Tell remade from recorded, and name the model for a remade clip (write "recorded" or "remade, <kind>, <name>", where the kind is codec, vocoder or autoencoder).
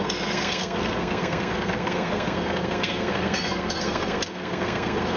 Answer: remade, codec, SNAC